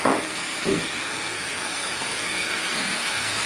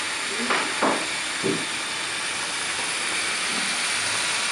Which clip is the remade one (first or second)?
first